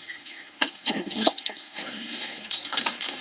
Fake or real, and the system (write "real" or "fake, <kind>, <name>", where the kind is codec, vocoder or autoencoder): fake, codec, SNAC